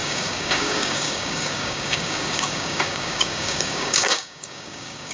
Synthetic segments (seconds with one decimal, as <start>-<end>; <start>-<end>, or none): 0.0-5.1